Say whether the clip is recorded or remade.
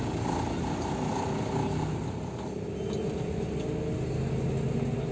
recorded